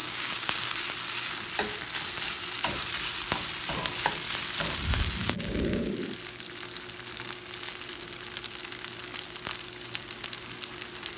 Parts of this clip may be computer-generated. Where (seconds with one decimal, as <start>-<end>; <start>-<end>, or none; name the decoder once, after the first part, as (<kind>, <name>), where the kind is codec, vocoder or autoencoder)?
0.0-0.7 (codec, DAC); 5.2-5.9

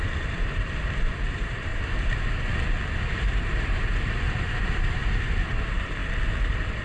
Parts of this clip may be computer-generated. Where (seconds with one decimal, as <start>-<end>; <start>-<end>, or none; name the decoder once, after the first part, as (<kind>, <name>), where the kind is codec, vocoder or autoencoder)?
0.0-1.7 (vocoder, BigVGAN v2); 3.1-5.0; 5.6-6.8

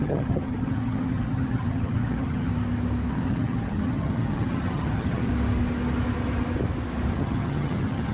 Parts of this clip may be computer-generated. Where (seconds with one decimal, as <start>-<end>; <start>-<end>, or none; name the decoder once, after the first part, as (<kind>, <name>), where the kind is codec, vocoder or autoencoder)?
0.0-2.5 (vocoder, HiFi-GAN); 3.1-5.3; 7.1-8.1

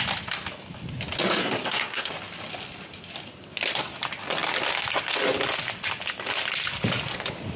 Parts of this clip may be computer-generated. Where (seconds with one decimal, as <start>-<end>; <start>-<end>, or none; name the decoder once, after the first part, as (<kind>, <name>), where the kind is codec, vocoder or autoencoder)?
1.4-2.1 (codec, SNAC)

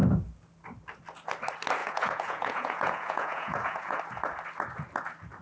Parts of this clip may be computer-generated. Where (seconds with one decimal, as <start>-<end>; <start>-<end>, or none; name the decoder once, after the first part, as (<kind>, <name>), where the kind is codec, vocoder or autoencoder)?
1.8-4.0 (vocoder, Vocos)

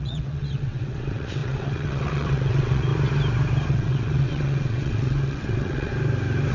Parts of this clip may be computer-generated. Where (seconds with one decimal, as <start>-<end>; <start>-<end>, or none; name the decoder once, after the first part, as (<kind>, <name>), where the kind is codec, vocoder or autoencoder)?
0.0-2.9 (vocoder, WaveNeXt); 3.7-5.9